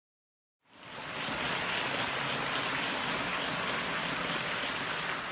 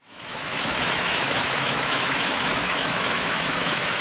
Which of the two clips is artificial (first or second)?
second